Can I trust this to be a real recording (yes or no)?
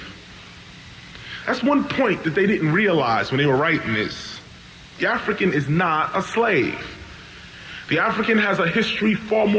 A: yes